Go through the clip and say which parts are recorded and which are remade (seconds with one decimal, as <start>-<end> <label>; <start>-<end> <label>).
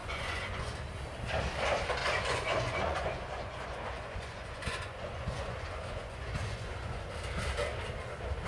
0.0-0.7 remade; 0.7-2.0 recorded; 2.0-7.1 remade; 7.1-8.5 recorded